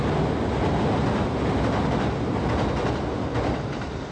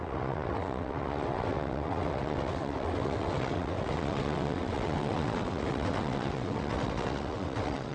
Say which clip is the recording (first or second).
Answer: first